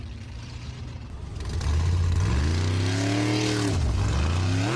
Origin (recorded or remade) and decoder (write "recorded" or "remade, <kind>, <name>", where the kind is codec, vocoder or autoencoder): recorded